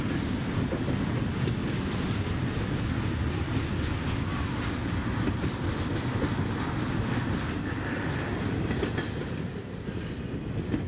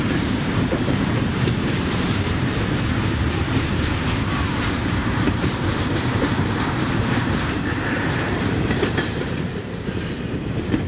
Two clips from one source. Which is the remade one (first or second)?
second